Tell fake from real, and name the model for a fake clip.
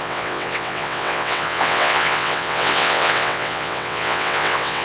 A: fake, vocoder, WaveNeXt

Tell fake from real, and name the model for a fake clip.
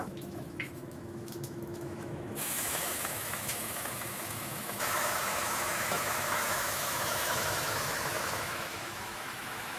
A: fake, autoencoder, DAC-VAE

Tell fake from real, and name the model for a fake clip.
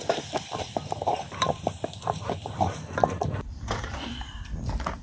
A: fake, vocoder, BigVGAN v2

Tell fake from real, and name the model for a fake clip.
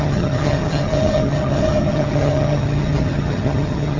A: fake, vocoder, HiFi-GAN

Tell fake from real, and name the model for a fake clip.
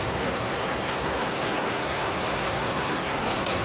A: fake, codec, SNAC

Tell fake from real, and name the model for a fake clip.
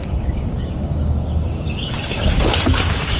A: fake, codec, DAC